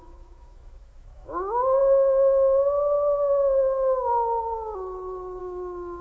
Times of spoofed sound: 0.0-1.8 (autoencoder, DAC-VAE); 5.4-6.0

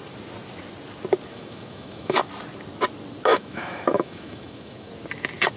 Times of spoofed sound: 1.3-2.2 (autoencoder, DAC-VAE); 3.3-4.9

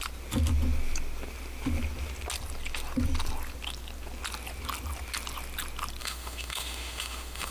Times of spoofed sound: 6.0-7.5 (autoencoder, DAC-VAE)

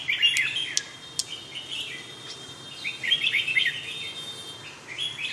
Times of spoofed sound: none

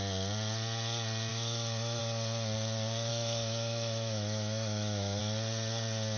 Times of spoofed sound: 1.3-2.0 (autoencoder, DAC-VAE); 3.1-5.2

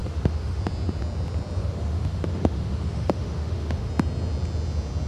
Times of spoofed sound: 0.0-0.6 (autoencoder, DAC-VAE); 1.6-3.9

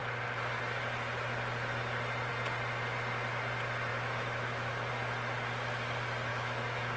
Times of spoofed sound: 3.9-4.9 (autoencoder, DAC-VAE); 6.3-7.0